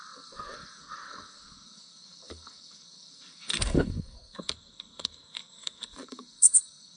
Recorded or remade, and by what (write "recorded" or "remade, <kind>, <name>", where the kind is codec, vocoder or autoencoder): remade, codec, SNAC